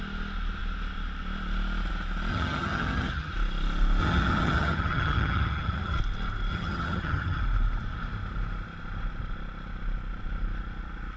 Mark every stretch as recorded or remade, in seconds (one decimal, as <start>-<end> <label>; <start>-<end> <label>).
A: 0.0-2.3 recorded; 2.3-3.3 remade; 3.3-4.0 recorded; 4.0-6.0 remade; 6.0-6.5 recorded; 6.5-7.4 remade; 7.4-11.2 recorded